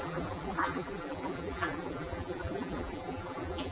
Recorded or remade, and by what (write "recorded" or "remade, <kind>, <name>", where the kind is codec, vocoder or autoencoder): remade, vocoder, BigVGAN v2